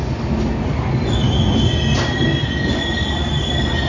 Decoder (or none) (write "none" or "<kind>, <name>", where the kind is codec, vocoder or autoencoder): none